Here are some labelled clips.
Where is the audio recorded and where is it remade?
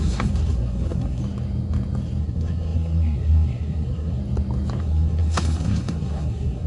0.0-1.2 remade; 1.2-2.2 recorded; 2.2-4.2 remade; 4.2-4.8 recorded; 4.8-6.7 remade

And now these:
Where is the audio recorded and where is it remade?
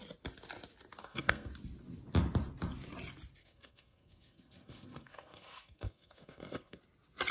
0.0-1.0 recorded; 1.0-1.5 remade; 1.5-3.4 recorded; 3.4-6.8 remade; 6.8-7.3 recorded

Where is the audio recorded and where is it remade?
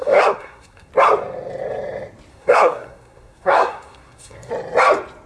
0.0-0.9 remade; 0.9-2.3 recorded; 2.3-4.5 remade; 4.5-5.3 recorded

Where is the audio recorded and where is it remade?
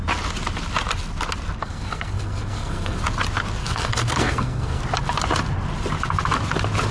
0.0-1.6 recorded; 1.6-3.0 remade; 3.0-3.6 recorded; 3.6-4.8 remade; 4.8-6.9 recorded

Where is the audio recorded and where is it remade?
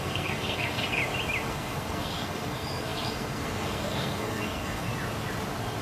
0.0-1.0 remade; 1.0-1.5 recorded; 1.5-4.9 remade; 4.9-5.8 recorded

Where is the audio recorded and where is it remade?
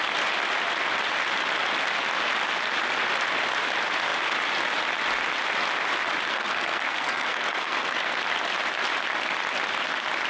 0.0-6.3 recorded; 6.3-8.2 remade; 8.2-10.3 recorded